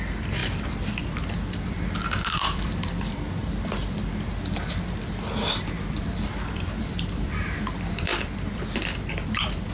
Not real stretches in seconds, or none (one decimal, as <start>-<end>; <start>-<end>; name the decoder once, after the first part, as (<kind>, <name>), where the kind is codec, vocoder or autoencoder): 0.0-0.4 (vocoder, BigVGAN v2); 1.0-3.4; 5.5-9.7